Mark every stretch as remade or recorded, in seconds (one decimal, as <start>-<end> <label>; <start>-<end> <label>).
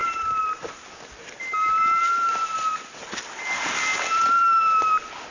0.0-5.3 recorded